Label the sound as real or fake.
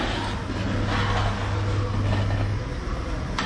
real